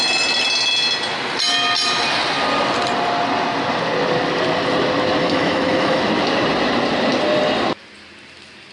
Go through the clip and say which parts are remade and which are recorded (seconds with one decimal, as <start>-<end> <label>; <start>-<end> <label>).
0.0-5.2 recorded; 5.2-6.0 remade; 6.0-8.7 recorded